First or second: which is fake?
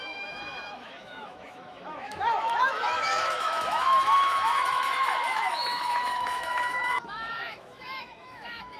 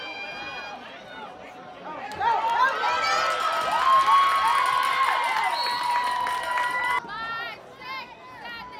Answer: first